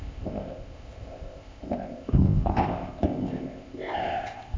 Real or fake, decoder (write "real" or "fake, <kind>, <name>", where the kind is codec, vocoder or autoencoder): fake, codec, ZipCodec